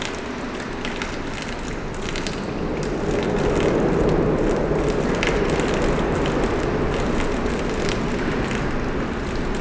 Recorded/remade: recorded